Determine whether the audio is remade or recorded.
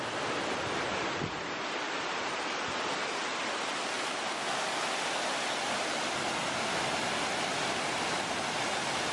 recorded